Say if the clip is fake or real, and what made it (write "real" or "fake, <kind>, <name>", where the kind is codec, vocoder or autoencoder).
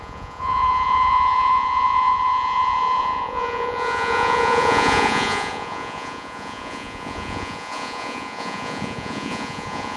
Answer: fake, vocoder, Vocos